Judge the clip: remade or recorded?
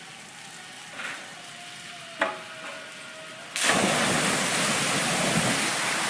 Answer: recorded